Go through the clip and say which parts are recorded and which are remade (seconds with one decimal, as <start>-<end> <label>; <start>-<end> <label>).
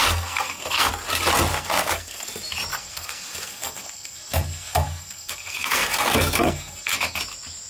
0.0-0.9 remade; 0.9-1.5 recorded; 1.5-2.3 remade; 2.3-2.7 recorded; 2.7-7.2 remade; 7.2-7.7 recorded